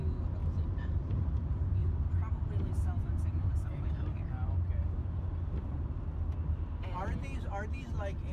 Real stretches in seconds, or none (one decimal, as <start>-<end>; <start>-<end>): 0.0-0.4; 1.4-1.8; 2.7-8.3

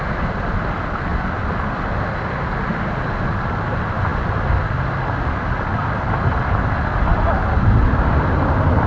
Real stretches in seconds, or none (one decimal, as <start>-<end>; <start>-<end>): 0.0-8.9

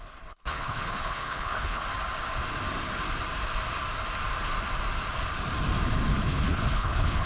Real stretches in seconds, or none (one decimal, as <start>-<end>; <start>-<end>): 1.8-6.2